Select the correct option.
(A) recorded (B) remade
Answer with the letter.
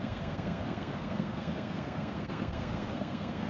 B